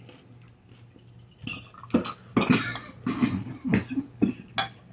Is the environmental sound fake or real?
real